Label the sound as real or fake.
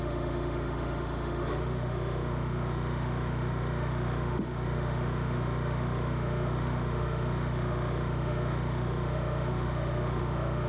fake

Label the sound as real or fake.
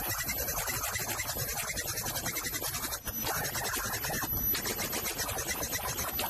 real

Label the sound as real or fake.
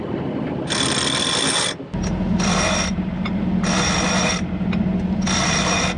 real